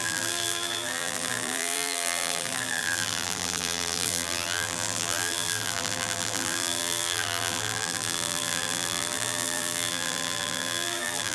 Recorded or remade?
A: remade